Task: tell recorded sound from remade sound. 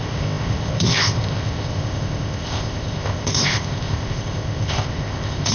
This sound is remade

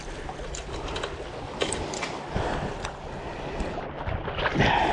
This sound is recorded